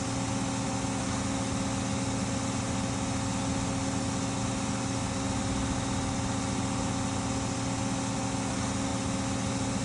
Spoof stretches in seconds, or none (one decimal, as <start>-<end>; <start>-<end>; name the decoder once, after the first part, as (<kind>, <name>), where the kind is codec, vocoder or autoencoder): none

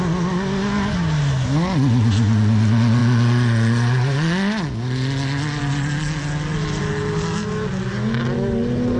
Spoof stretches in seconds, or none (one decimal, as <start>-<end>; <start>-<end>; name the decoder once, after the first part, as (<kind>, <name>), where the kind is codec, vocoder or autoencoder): none

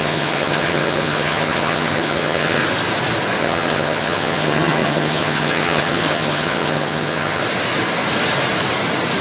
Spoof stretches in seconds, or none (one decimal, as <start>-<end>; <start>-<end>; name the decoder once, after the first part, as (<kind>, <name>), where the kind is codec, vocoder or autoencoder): 0.0-2.6 (vocoder, HiFi-GAN); 3.4-7.4

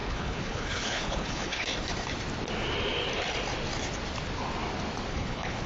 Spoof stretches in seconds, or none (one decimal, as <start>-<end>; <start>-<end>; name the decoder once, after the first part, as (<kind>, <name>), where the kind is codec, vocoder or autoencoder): 0.0-1.7 (codec, HILCodec); 5.1-5.7

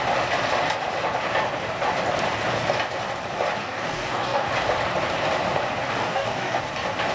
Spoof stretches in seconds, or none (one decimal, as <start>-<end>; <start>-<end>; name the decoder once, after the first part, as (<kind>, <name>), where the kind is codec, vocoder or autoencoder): 3.6-4.5 (codec, DAC); 5.9-6.6